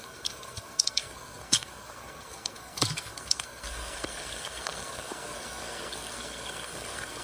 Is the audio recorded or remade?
remade